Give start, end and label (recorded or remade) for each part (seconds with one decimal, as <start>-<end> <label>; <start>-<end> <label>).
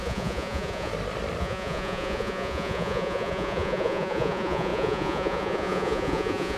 0.0-0.9 remade; 0.9-1.4 recorded; 1.4-6.6 remade